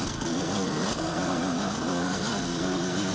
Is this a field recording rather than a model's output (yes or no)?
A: no